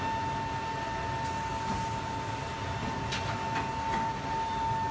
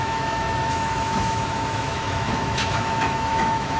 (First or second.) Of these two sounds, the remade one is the second